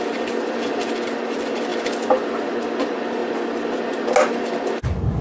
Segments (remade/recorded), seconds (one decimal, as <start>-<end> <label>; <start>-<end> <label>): 0.0-5.2 recorded